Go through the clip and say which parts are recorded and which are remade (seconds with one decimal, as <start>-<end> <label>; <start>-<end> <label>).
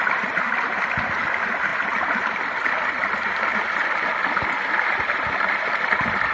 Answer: 0.0-6.3 recorded